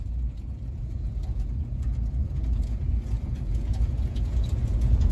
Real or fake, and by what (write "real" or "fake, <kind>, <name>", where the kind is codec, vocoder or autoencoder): fake, vocoder, Vocos